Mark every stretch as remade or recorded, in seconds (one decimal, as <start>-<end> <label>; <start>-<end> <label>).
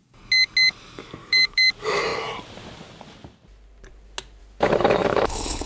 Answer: 0.0-1.2 recorded; 1.2-1.7 remade; 1.7-5.0 recorded; 5.0-5.7 remade